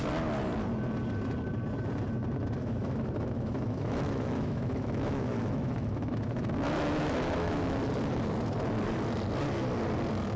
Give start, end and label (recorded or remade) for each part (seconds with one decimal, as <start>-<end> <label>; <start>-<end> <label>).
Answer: 0.0-2.6 recorded; 2.6-7.8 remade; 7.8-10.4 recorded